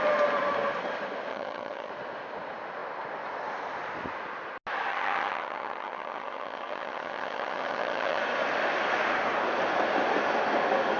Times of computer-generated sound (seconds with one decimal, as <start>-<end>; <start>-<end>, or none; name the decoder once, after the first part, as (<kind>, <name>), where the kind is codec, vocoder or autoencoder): 1.3-1.9 (vocoder, HiFi-GAN); 4.9-8.2